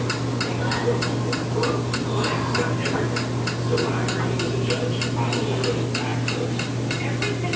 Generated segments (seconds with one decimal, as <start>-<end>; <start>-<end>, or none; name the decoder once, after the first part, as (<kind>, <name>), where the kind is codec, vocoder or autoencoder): none